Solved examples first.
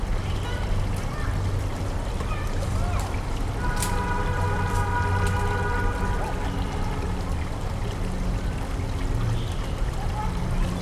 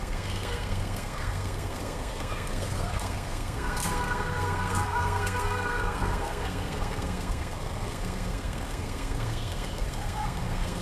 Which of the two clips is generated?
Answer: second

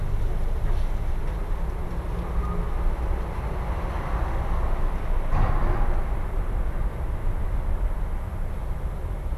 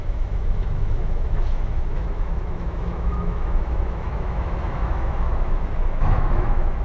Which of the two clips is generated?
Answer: second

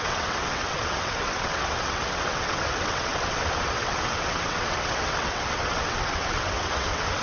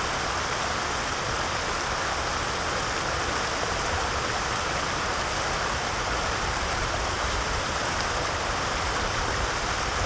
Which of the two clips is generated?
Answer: first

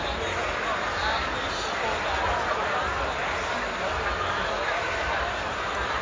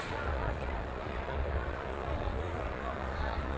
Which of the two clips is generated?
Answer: second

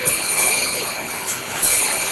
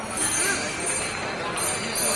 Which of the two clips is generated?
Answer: first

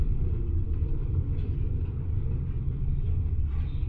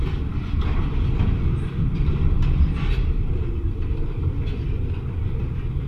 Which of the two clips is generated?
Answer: second